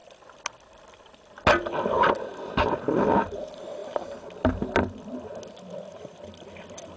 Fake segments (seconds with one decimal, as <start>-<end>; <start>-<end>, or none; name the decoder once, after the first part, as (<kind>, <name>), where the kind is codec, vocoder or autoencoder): none